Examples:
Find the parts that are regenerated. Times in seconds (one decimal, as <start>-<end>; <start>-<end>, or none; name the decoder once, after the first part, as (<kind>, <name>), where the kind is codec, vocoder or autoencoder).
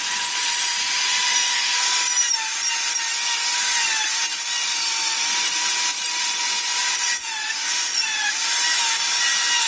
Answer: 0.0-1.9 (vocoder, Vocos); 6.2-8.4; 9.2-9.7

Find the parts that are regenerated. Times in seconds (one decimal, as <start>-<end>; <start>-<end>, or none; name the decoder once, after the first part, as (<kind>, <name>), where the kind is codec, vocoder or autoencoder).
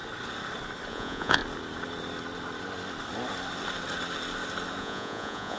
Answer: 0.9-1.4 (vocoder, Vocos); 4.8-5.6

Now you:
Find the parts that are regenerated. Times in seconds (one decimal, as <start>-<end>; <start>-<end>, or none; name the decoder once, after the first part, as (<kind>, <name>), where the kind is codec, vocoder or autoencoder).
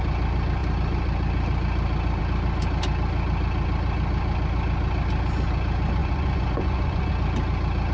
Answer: 6.0-7.1 (vocoder, Vocos)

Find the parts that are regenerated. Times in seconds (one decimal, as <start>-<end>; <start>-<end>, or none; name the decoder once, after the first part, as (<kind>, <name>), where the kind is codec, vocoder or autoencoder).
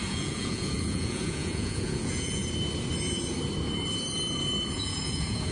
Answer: 0.0-2.4 (vocoder, Vocos); 4.7-5.5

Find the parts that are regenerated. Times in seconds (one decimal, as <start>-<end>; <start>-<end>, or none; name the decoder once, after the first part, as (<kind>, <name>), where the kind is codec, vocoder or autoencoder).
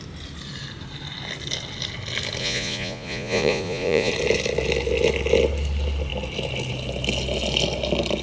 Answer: 2.4-4.1 (vocoder, Vocos)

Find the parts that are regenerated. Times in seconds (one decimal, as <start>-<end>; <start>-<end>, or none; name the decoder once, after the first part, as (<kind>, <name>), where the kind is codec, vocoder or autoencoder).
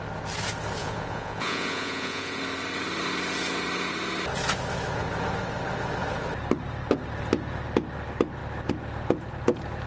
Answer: 0.8-2.4 (vocoder, Vocos)